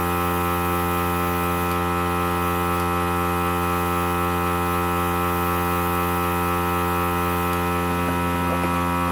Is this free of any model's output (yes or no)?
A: yes